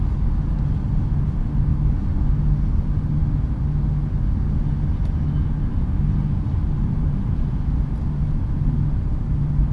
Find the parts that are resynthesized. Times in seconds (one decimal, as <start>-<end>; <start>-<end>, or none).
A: 6.5-7.4